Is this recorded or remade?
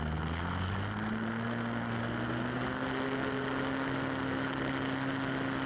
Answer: recorded